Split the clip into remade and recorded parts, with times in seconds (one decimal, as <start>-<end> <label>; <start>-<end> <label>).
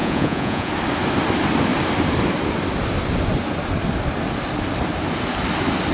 0.0-0.7 remade; 0.7-5.9 recorded